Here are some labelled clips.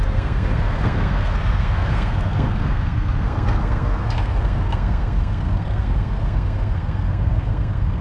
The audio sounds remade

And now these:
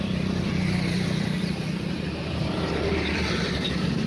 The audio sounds remade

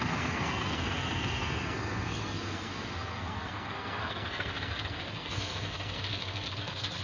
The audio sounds remade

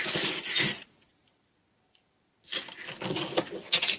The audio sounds recorded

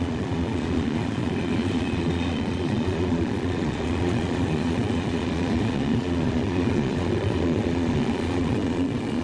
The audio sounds remade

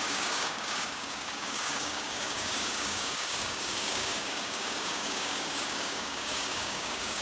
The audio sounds remade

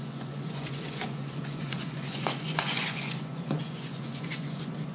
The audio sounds remade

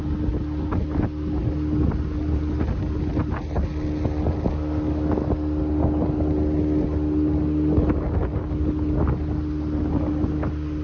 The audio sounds recorded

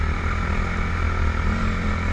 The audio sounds recorded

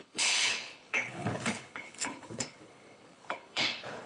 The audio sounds remade